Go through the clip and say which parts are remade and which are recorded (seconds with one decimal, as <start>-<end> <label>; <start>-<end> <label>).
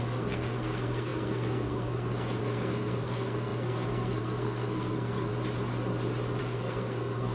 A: 0.0-5.3 remade; 5.3-6.4 recorded; 6.4-7.3 remade